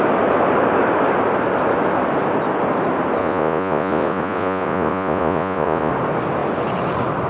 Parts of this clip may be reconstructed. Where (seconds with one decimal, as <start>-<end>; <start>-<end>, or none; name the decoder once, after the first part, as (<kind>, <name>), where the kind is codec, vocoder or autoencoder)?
3.2-5.9 (vocoder, Vocos)